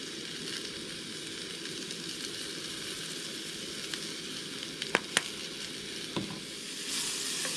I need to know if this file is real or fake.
real